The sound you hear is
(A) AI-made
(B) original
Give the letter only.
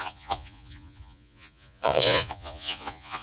A